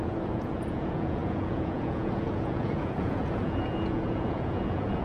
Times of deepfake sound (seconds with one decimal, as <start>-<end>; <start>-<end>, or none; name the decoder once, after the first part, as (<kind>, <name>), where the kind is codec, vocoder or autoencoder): 0.0-5.0 (vocoder, Vocos)